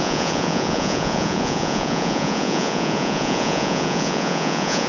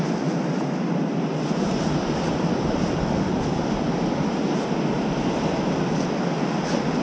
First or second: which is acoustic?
second